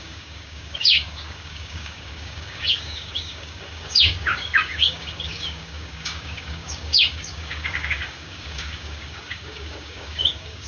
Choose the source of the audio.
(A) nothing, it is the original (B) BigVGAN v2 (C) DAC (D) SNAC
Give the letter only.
C